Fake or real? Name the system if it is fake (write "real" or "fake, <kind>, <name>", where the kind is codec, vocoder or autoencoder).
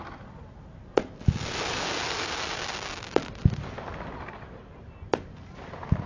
real